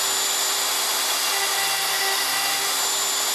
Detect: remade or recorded recorded